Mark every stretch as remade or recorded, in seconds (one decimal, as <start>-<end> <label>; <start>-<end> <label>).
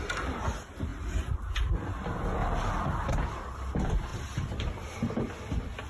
0.0-0.9 remade; 0.9-1.6 recorded; 1.6-2.4 remade; 2.4-3.1 recorded; 3.1-5.9 remade